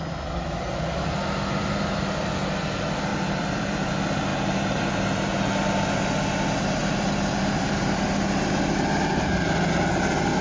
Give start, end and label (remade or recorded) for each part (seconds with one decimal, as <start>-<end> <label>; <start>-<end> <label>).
0.0-3.1 recorded; 3.1-3.9 remade; 3.9-4.3 recorded; 4.3-4.9 remade; 4.9-6.8 recorded; 6.8-8.0 remade; 8.0-10.4 recorded